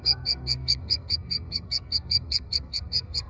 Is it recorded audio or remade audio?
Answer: remade